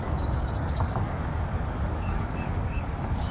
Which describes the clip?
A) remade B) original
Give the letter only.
A